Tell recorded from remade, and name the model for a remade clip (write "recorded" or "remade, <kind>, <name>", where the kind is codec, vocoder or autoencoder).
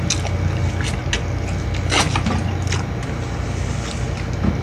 recorded